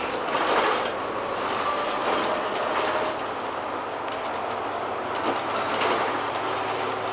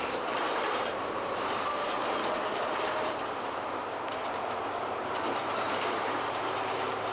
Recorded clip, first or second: first